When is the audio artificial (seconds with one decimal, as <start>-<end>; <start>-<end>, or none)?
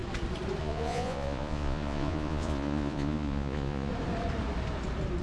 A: 0.6-3.9